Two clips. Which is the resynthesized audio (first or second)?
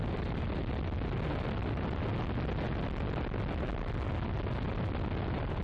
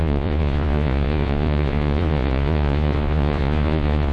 second